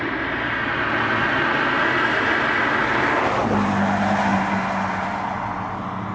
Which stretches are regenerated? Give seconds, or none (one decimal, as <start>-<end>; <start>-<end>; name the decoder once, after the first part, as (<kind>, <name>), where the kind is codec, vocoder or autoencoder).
none